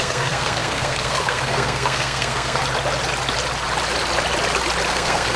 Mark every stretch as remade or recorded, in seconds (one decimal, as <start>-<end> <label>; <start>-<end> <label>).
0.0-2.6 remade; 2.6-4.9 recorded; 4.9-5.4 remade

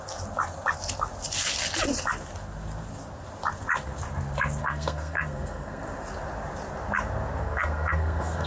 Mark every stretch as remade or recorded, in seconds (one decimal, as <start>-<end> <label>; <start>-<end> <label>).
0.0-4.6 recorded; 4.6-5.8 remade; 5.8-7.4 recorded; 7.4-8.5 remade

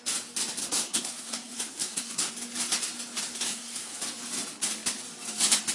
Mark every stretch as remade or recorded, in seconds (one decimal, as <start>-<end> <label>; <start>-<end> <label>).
0.0-0.6 recorded; 0.6-2.3 remade; 2.3-3.3 recorded; 3.3-4.0 remade; 4.0-5.7 recorded

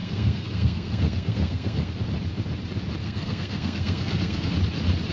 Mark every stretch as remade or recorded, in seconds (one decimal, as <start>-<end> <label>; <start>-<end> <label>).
0.0-1.9 remade; 1.9-3.0 recorded; 3.0-4.5 remade; 4.5-5.1 recorded

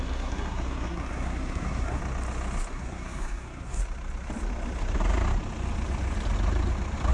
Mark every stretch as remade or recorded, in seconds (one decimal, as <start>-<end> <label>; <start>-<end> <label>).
0.0-2.0 remade; 2.0-2.7 recorded; 2.7-3.8 remade; 3.8-7.1 recorded

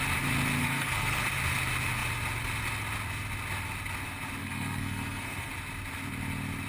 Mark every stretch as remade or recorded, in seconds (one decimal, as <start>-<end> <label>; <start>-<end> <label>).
0.0-0.6 recorded; 0.6-1.2 remade; 1.2-4.4 recorded; 4.4-5.5 remade; 5.5-6.7 recorded

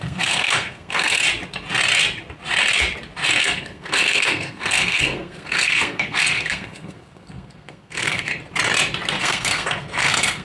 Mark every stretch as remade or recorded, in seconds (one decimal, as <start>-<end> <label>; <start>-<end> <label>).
0.0-1.2 remade; 1.2-3.4 recorded; 3.4-8.3 remade; 8.3-9.2 recorded; 9.2-10.4 remade

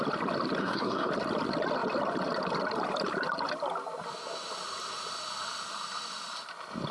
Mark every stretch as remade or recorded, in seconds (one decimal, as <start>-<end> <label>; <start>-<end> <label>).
0.0-0.6 recorded; 0.6-1.1 remade; 1.1-6.9 recorded